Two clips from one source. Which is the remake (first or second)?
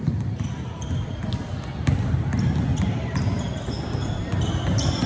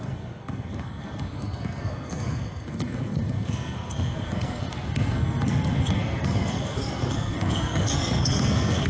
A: second